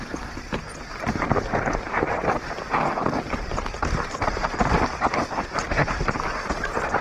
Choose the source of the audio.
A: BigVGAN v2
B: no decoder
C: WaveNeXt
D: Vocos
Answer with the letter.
B